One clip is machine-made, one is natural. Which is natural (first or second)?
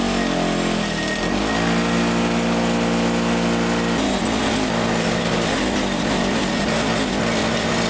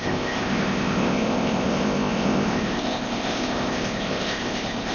first